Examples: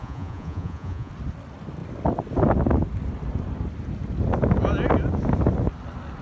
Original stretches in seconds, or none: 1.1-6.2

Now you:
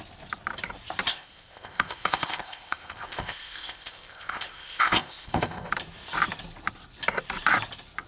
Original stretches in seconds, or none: 0.0-1.1; 5.7-8.1